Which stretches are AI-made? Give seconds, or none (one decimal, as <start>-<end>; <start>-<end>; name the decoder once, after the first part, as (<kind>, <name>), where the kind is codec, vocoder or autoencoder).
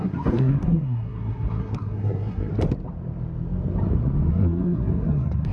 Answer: 0.0-2.5 (codec, SNAC); 4.3-5.5